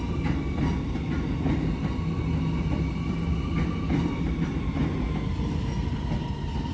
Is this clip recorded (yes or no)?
yes